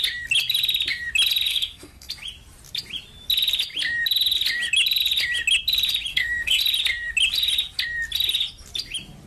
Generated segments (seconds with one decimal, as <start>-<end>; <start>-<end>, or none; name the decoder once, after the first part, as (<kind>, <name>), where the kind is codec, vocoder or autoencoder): 1.5-2.1 (codec, SNAC); 6.1-6.6